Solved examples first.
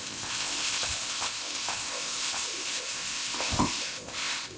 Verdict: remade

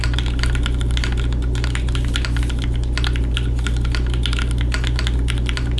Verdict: recorded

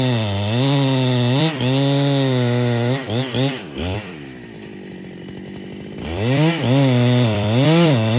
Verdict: remade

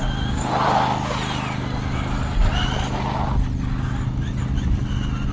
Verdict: recorded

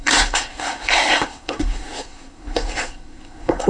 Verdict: remade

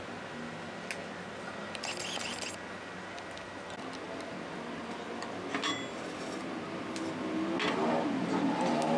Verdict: recorded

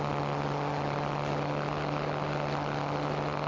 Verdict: recorded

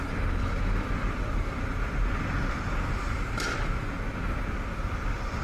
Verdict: recorded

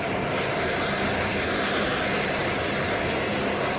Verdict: recorded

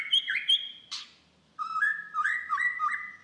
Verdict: remade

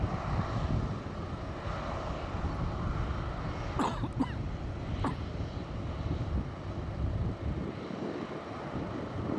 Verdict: recorded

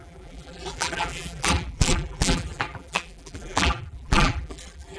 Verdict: remade